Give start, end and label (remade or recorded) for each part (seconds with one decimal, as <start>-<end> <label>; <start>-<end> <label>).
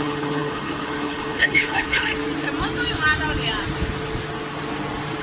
0.0-2.1 remade; 2.1-5.2 recorded